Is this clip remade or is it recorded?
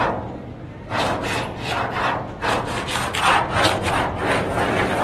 recorded